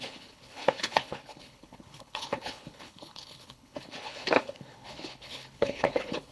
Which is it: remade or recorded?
remade